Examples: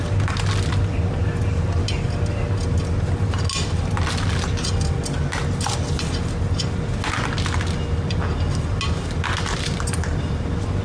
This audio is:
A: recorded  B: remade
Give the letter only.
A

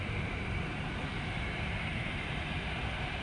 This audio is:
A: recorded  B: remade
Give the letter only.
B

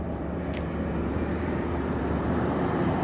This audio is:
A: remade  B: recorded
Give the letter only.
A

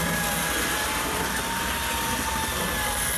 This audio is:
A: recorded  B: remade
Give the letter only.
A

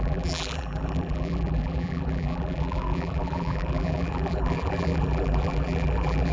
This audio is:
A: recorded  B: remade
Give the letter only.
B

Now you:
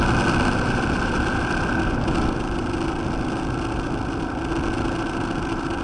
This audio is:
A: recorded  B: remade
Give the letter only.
A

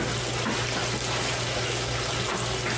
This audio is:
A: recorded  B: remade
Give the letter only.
A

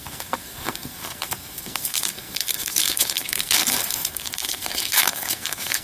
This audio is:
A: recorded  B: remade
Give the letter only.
B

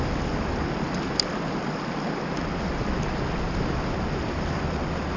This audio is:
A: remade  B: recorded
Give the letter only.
B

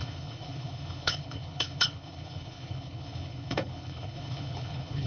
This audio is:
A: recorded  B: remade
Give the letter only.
B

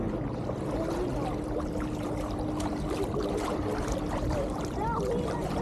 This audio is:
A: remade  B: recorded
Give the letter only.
B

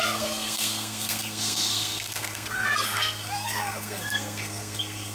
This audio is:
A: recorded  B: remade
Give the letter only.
B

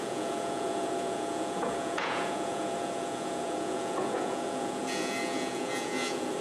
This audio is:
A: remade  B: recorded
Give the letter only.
A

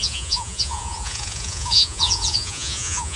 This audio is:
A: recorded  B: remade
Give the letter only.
B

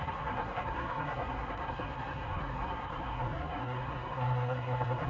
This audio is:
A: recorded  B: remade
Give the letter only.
B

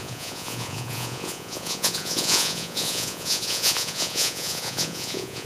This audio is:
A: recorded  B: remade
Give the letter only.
B